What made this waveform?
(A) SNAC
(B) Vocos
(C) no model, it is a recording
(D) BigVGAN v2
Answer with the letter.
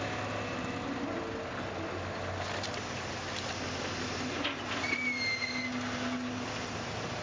C